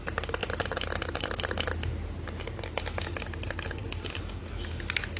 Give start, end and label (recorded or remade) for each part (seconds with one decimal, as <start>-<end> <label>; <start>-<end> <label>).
0.0-5.2 recorded